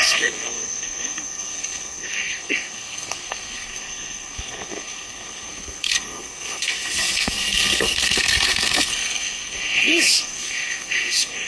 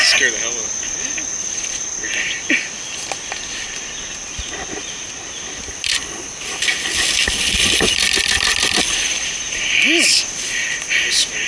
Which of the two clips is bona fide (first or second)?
second